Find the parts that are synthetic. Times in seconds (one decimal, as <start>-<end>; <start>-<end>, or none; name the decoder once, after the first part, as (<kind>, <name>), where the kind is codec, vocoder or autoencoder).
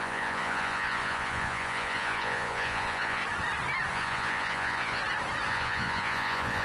0.0-3.2 (vocoder, Vocos); 3.9-5.0; 5.5-6.6